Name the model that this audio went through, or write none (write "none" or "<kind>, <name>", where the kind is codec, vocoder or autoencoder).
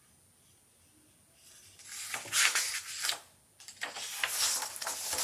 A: none